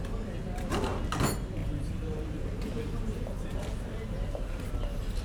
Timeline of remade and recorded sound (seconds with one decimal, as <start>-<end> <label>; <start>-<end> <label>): 0.0-1.6 recorded; 1.6-4.7 remade; 4.7-5.2 recorded